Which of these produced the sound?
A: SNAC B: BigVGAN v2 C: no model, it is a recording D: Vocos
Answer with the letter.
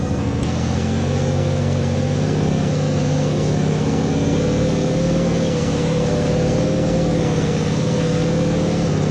A